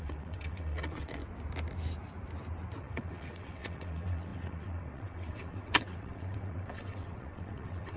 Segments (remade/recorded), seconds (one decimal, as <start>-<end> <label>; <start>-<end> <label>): 0.0-1.2 remade; 1.2-2.8 recorded; 2.8-8.0 remade